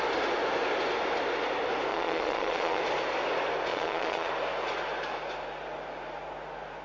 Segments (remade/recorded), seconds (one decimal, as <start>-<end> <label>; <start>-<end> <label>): 0.0-1.9 recorded; 1.9-2.8 remade; 2.8-3.7 recorded; 3.7-4.3 remade; 4.3-6.8 recorded